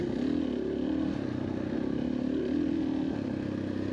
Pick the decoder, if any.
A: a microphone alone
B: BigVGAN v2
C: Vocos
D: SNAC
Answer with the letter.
A